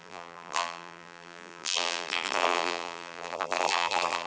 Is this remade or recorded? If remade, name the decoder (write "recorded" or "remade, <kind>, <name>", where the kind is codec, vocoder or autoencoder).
remade, vocoder, BigVGAN v2